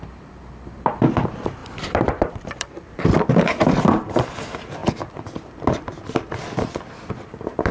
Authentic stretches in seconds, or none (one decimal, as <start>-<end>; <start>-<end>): 4.8-7.1